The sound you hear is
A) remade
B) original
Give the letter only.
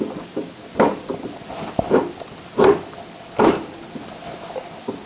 B